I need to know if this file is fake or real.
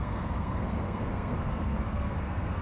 fake